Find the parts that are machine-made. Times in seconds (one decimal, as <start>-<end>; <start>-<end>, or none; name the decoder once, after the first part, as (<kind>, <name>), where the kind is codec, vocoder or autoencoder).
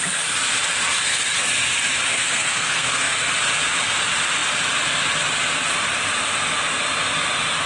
2.2-3.3 (codec, SNAC)